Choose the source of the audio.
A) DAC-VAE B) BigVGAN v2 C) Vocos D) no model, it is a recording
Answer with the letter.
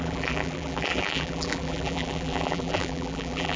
B